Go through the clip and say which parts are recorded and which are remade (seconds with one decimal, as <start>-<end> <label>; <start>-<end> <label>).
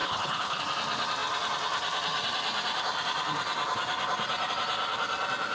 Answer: 0.0-0.6 remade; 0.6-5.5 recorded